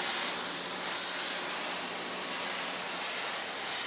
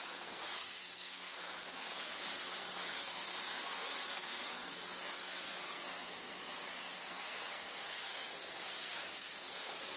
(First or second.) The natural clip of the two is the first